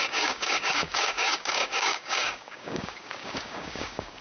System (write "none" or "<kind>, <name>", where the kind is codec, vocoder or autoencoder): codec, DAC